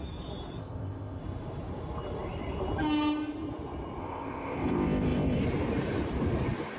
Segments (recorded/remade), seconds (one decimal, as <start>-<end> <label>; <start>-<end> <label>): 0.0-0.6 recorded; 0.6-1.2 remade; 1.2-4.0 recorded; 4.0-5.4 remade; 5.4-6.8 recorded